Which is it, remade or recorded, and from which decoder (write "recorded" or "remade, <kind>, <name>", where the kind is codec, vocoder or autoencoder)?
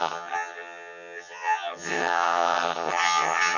remade, vocoder, HiFi-GAN